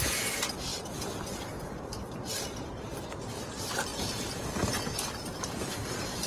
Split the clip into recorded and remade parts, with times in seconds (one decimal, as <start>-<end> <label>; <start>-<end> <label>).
0.0-6.3 recorded